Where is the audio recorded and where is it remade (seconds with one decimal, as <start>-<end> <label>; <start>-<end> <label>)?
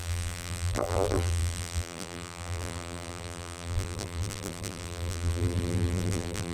0.0-6.5 remade